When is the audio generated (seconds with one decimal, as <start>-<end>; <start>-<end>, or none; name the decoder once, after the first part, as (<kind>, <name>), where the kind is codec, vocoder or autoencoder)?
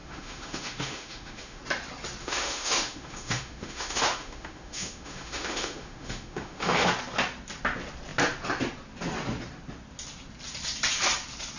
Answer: 0.0-1.6 (autoencoder, DAC-VAE); 2.2-6.9